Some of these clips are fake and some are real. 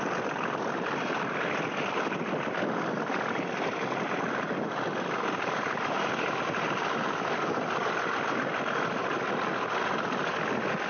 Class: real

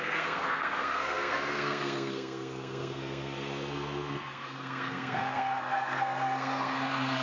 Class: fake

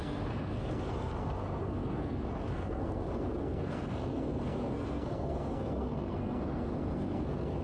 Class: fake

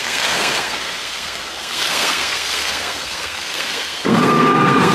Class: fake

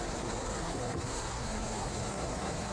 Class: fake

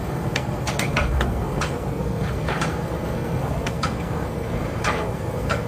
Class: fake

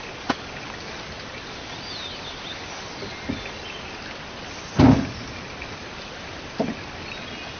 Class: real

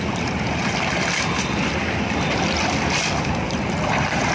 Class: real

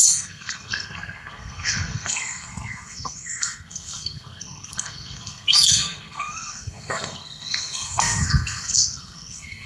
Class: fake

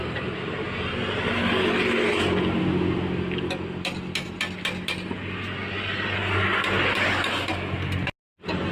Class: real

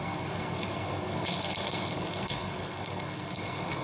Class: fake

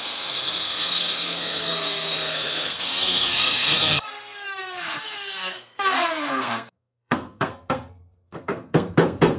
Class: fake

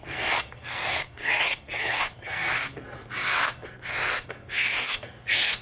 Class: fake